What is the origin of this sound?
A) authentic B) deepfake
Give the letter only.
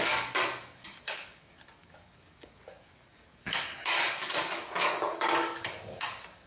B